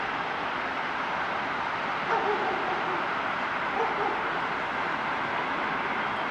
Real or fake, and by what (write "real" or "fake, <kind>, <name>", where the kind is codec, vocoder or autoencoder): real